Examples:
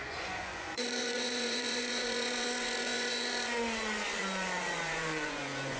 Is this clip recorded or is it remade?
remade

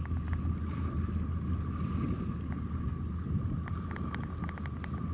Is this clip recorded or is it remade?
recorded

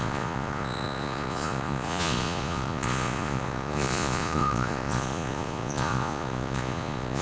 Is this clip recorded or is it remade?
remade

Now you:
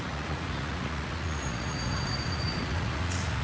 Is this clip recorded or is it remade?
remade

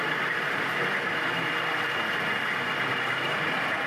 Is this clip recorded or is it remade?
recorded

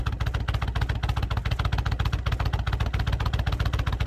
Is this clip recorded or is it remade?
recorded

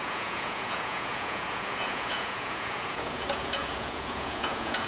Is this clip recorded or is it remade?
remade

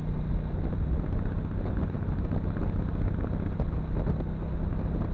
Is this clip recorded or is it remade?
recorded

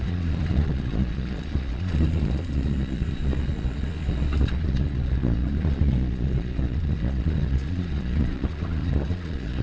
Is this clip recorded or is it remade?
remade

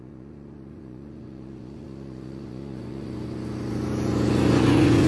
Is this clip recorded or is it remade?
remade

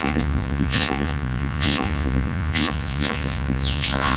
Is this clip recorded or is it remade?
remade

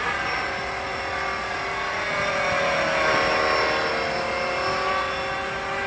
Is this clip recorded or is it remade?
recorded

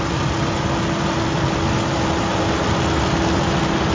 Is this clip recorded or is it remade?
recorded